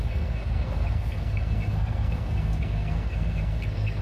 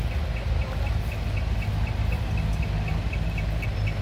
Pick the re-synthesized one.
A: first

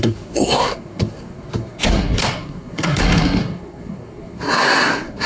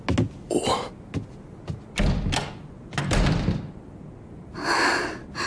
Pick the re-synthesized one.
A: first